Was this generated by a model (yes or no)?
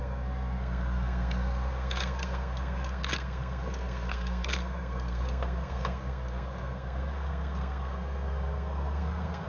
yes